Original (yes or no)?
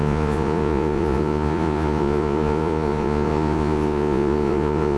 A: no